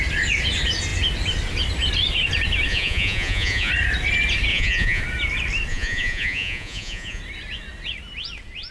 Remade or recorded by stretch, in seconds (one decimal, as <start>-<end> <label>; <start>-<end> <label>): 0.0-2.7 recorded; 2.7-3.7 remade; 3.7-4.5 recorded; 4.5-5.0 remade; 5.0-5.7 recorded; 5.7-7.2 remade; 7.2-8.7 recorded